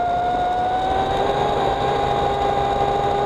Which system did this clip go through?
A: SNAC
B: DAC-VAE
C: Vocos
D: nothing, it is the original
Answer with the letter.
D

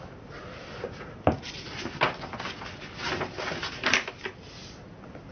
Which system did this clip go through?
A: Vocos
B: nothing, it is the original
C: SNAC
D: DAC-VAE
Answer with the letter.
B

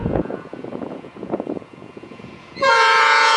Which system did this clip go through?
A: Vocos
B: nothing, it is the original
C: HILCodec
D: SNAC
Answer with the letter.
A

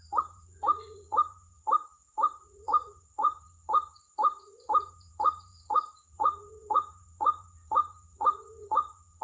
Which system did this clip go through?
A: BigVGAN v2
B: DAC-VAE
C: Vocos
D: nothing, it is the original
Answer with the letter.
C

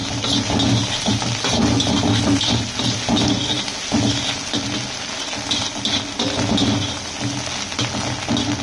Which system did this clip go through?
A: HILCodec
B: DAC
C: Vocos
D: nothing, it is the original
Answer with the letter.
D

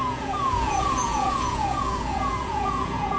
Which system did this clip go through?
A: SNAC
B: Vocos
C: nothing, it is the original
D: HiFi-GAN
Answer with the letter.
B